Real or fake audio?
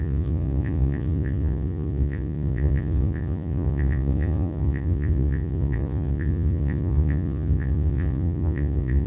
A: fake